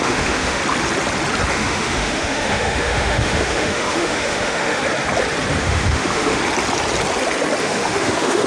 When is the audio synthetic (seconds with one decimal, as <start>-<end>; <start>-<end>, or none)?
0.0-0.6; 1.5-4.8; 5.6-6.4; 7.6-8.5